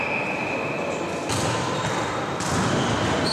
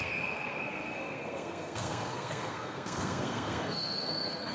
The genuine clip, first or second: first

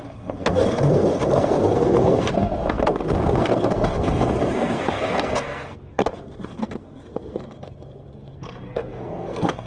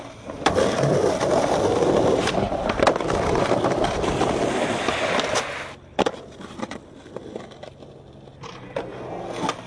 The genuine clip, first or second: second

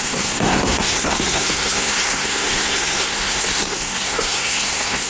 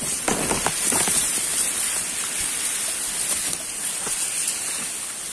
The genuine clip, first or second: second